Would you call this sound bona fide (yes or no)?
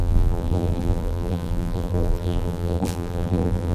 no